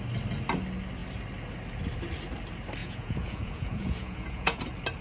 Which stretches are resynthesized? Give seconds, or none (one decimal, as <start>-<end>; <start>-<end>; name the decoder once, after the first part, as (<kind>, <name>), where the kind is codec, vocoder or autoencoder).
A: 2.8-4.6 (vocoder, Vocos)